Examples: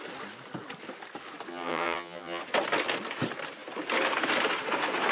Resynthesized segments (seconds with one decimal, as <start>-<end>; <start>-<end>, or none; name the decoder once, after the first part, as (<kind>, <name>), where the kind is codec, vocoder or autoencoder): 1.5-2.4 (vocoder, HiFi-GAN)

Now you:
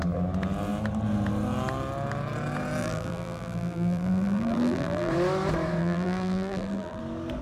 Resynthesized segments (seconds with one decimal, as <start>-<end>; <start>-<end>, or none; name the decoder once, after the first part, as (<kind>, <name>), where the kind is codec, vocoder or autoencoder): 2.8-5.1 (vocoder, BigVGAN v2); 5.8-7.0

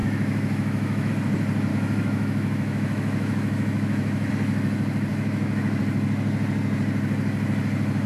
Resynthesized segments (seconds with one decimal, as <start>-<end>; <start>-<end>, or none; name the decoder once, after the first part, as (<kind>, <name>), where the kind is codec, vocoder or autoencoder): 0.0-1.1 (autoencoder, DAC-VAE); 1.7-4.3; 5.1-5.8

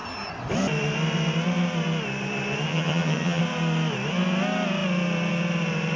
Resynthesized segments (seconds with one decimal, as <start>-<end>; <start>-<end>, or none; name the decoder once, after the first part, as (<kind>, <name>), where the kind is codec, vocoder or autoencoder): 2.7-3.4 (vocoder, HiFi-GAN)

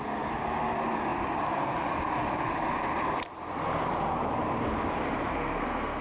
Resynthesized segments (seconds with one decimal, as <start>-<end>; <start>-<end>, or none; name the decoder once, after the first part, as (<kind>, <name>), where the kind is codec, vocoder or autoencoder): 5.3-6.0 (codec, SNAC)

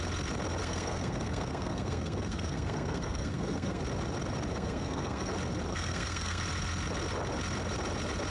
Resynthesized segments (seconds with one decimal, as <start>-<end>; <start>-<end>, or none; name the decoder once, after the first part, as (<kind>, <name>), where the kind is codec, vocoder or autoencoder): 0.6-3.8 (codec, SNAC); 4.5-5.3; 5.7-6.4

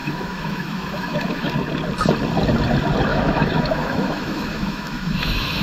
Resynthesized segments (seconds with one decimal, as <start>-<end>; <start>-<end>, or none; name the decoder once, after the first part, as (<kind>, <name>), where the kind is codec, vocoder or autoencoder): 0.0-1.5 (autoencoder, DAC-VAE); 3.1-5.6

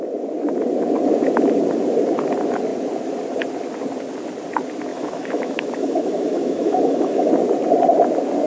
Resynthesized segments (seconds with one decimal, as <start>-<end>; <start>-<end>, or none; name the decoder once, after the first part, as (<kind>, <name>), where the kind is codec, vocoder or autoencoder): 4.9-7.3 (autoencoder, DAC-VAE)